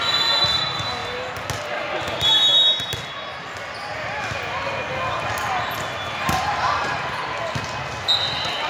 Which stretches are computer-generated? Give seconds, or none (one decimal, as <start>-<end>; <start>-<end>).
none